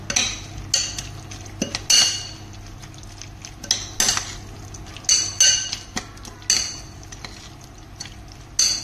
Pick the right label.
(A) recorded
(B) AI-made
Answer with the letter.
A